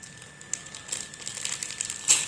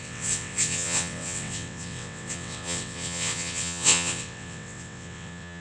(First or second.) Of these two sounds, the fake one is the second